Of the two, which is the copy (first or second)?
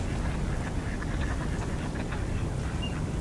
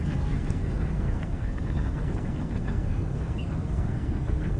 second